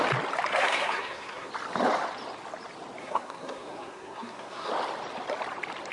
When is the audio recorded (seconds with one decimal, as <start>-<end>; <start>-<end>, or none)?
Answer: 0.0-0.5; 1.5-3.0; 4.7-5.9